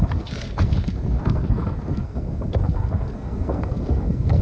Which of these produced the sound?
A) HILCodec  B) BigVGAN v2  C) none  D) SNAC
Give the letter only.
D